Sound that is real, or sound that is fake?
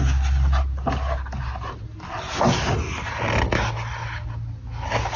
real